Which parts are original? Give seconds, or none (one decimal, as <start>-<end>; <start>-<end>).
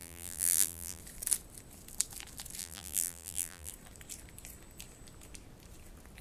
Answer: 1.0-2.6; 3.7-6.2